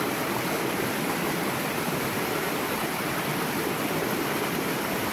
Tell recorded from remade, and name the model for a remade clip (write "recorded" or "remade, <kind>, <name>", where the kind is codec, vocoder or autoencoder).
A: recorded